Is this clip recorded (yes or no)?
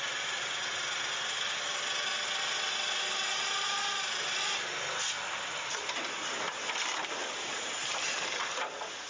yes